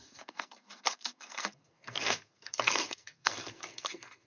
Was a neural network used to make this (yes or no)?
yes